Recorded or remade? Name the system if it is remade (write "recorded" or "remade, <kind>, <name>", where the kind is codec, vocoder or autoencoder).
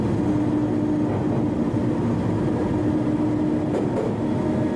recorded